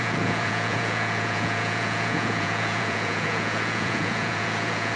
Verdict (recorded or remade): remade